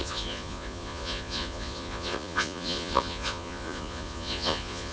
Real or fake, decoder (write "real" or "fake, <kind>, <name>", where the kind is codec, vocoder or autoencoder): fake, vocoder, Vocos